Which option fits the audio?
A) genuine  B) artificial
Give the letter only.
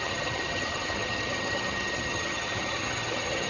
B